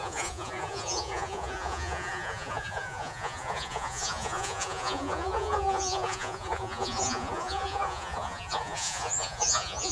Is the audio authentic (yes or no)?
no